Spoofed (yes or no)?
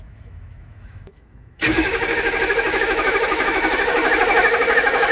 yes